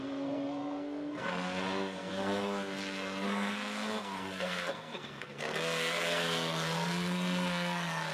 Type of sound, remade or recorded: remade